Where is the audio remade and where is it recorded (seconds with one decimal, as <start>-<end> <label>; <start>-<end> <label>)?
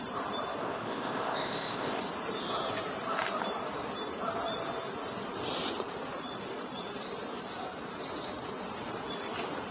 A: 0.0-0.6 recorded; 0.6-2.0 remade; 2.0-9.7 recorded